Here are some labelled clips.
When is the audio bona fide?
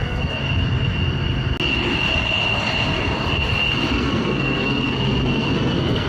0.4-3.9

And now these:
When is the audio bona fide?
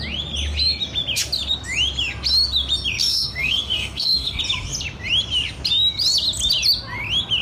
0.0-3.1; 4.4-7.4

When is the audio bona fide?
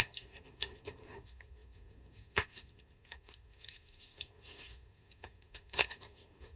none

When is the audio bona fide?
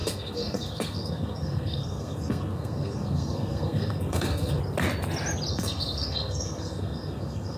4.6-5.5